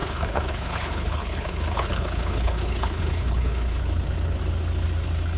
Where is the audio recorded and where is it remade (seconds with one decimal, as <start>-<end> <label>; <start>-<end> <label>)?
0.0-3.8 remade; 3.8-5.4 recorded